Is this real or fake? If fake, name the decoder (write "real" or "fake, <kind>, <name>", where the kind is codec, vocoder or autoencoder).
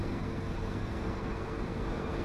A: fake, codec, SNAC